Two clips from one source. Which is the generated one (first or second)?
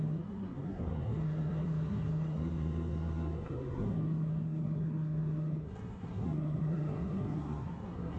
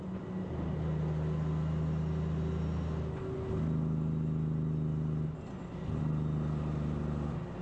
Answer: first